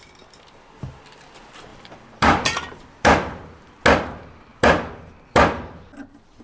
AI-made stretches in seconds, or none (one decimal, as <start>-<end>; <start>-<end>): 1.7-3.8; 4.5-6.0

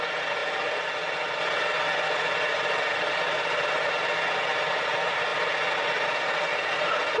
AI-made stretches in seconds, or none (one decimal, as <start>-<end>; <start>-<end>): 0.0-0.4; 4.7-5.3; 6.5-7.2

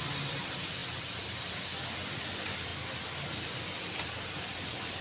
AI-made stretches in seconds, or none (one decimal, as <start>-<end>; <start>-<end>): 0.0-0.8; 2.3-2.7; 3.5-5.0

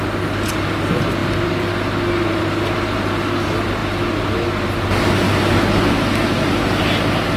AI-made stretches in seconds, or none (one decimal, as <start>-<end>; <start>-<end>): none

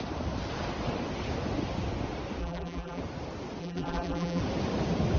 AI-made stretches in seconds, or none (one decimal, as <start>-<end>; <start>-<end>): 2.4-3.0; 3.6-4.4

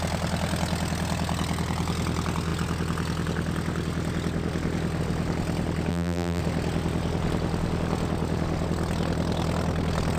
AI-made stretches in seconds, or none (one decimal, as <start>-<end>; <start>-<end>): 5.9-6.4